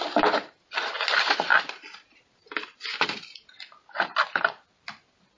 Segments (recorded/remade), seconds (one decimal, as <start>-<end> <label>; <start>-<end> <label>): 0.0-1.5 recorded; 1.5-2.8 remade; 2.8-5.4 recorded